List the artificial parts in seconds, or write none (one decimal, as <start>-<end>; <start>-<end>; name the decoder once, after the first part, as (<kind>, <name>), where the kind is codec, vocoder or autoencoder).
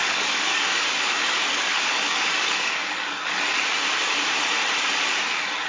0.0-3.4 (codec, DAC)